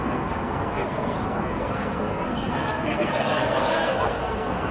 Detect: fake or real fake